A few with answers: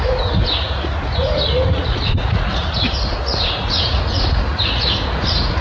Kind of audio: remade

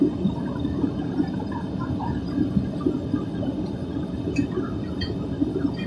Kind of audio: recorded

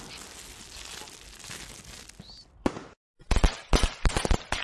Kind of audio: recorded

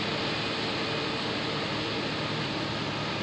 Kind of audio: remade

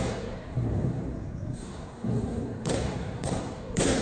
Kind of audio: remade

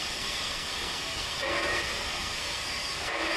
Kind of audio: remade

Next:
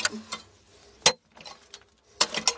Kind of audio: recorded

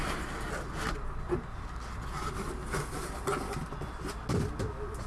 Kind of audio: recorded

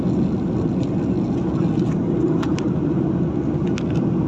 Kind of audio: recorded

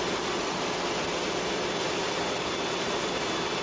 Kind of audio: recorded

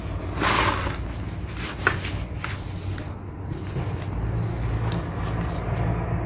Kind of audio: recorded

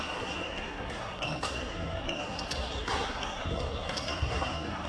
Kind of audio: remade